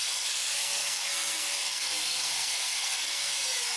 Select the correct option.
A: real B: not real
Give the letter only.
B